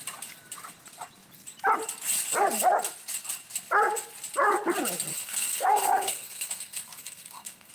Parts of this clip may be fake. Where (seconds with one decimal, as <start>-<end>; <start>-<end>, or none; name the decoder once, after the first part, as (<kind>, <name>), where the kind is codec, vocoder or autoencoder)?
5.1-7.7 (codec, SNAC)